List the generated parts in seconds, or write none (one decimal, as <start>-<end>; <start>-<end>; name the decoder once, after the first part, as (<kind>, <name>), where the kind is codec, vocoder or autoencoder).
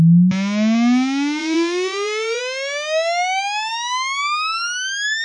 1.4-2.4 (vocoder, BigVGAN v2)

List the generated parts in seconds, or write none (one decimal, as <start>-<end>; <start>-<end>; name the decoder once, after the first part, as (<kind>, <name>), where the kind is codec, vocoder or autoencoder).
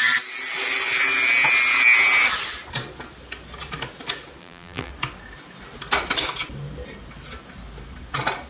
4.4-4.9 (vocoder, BigVGAN v2)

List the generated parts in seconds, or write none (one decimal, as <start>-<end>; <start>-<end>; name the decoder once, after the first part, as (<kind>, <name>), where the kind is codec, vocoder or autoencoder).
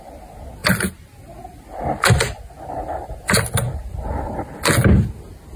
none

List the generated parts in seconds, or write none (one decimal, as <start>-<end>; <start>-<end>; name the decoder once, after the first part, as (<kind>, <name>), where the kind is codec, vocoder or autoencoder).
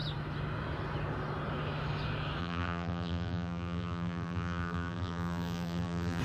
2.4-6.2 (vocoder, BigVGAN v2)